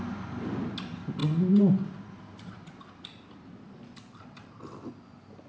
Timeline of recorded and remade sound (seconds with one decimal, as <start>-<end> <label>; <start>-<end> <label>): 0.0-1.2 recorded; 1.2-4.5 remade; 4.5-5.5 recorded